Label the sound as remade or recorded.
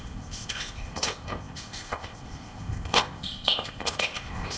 remade